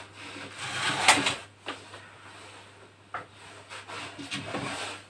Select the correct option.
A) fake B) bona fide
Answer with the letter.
B